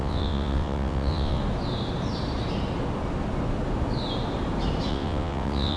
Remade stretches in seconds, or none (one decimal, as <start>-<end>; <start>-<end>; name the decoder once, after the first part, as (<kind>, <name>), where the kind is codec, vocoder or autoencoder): 0.0-1.4 (vocoder, WaveNeXt); 4.9-5.8